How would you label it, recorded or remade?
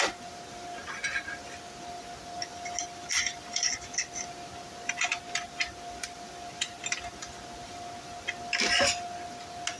recorded